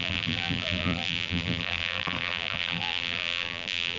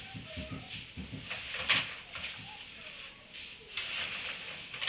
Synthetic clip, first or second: first